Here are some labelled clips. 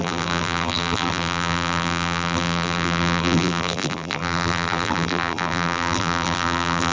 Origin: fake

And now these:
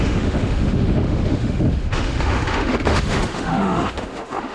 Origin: fake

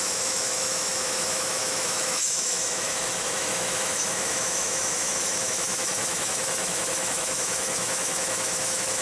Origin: fake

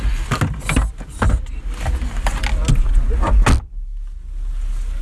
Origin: real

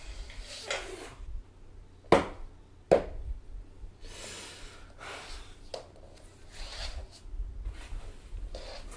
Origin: real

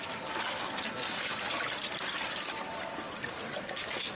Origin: fake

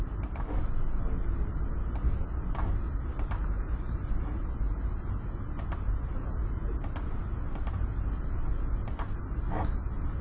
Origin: real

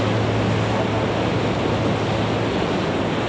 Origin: real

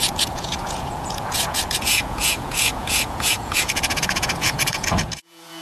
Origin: fake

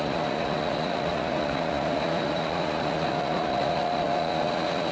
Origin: fake